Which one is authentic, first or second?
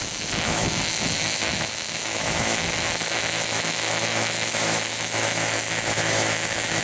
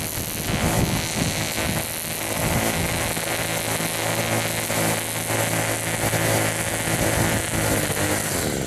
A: second